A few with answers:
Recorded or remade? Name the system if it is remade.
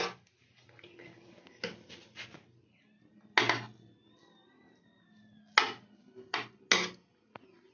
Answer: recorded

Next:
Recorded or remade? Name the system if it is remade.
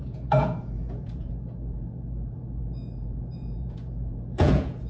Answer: remade, vocoder, Vocos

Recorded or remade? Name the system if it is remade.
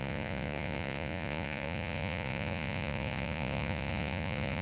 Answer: remade, vocoder, Vocos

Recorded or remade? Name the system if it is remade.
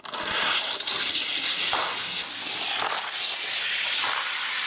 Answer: recorded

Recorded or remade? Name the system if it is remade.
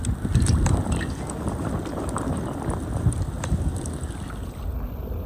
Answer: recorded